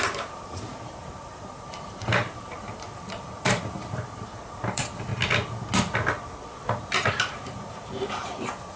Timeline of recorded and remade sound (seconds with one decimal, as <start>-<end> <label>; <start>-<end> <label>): 0.0-5.1 remade; 5.1-7.1 recorded; 7.1-8.8 remade